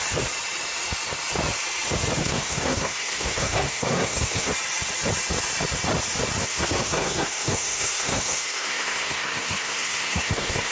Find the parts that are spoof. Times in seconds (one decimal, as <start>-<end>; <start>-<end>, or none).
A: 2.2-4.5; 6.4-10.7